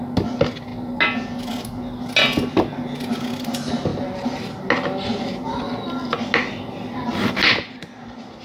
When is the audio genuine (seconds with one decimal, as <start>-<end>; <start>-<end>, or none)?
0.0-3.9; 4.6-8.4